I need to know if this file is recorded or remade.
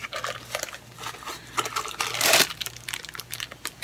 recorded